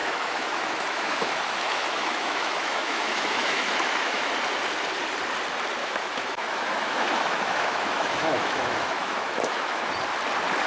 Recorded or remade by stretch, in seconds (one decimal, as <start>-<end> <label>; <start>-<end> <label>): 0.0-4.3 remade; 4.3-5.8 recorded; 5.8-9.9 remade; 9.9-10.7 recorded